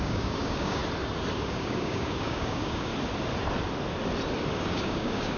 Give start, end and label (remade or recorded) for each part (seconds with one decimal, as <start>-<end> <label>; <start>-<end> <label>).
0.0-0.8 remade; 0.8-1.4 recorded; 1.4-2.9 remade; 2.9-4.5 recorded; 4.5-5.4 remade